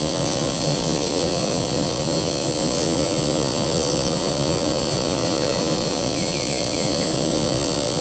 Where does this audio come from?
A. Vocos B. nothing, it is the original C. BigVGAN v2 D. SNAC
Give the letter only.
A